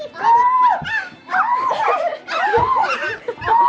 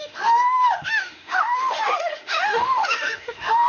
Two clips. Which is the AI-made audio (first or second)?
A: second